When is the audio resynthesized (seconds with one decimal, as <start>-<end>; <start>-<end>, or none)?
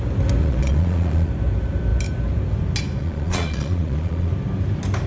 0.4-1.3; 3.0-4.3